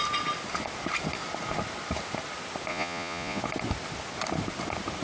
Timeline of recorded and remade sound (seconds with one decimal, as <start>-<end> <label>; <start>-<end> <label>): 0.0-2.7 recorded; 2.7-3.4 remade; 3.4-5.0 recorded